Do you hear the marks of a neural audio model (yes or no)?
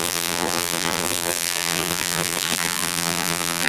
yes